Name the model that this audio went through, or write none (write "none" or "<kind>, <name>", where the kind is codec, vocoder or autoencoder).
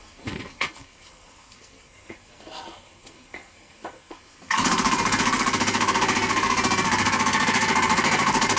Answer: codec, SNAC